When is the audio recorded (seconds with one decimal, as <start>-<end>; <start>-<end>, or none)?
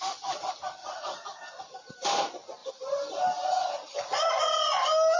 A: 0.0-0.8; 1.4-5.2